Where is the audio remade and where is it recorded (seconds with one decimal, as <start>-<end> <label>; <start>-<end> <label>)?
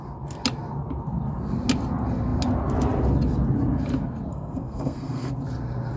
0.0-4.3 recorded; 4.3-5.3 remade; 5.3-6.0 recorded